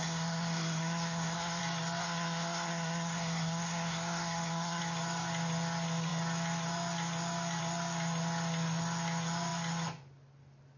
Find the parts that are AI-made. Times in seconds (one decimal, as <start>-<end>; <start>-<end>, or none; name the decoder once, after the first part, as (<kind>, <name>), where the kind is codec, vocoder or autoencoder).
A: 0.0-1.6 (codec, SNAC); 2.0-4.8